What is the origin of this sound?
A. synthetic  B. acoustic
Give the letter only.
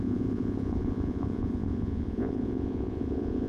A